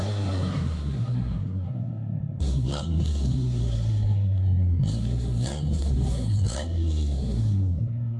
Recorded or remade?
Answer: remade